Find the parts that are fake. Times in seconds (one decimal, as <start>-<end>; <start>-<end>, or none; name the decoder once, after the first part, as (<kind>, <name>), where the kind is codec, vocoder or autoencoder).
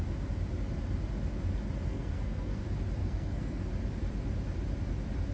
1.9-2.6 (codec, SNAC); 3.0-3.7